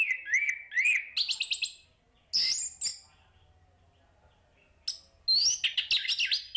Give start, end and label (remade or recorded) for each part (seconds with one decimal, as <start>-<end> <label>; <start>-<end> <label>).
0.0-6.6 recorded